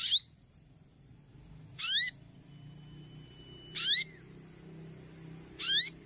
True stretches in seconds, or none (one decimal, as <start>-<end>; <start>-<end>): 0.0-6.1